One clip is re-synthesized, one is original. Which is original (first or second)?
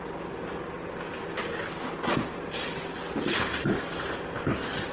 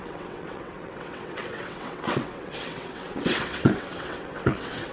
first